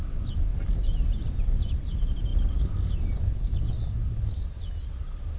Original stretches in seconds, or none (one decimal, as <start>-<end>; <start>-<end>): 0.0-5.4